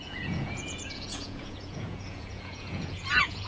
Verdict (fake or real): fake